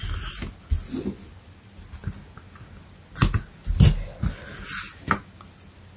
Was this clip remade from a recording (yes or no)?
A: no